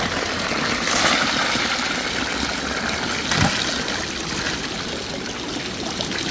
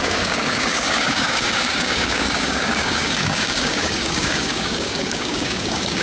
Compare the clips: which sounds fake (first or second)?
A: second